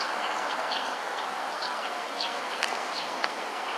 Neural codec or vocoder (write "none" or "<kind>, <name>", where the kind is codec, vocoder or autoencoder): codec, SNAC